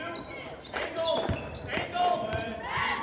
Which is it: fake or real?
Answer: fake